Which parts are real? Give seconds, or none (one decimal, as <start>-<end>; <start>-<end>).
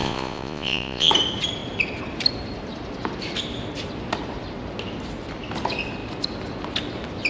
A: 1.1-7.3